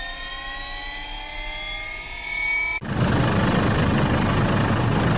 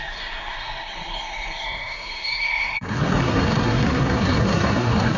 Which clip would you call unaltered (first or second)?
first